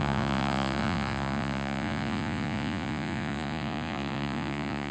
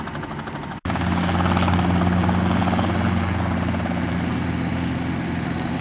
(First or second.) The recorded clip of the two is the second